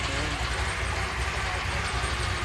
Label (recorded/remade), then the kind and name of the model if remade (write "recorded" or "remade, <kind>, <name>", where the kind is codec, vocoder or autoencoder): recorded